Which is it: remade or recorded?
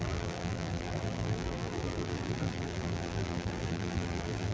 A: remade